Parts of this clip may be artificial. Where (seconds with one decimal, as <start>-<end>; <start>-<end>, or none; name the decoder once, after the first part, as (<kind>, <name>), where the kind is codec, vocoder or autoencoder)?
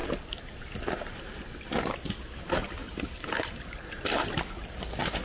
2.8-3.8 (vocoder, BigVGAN v2)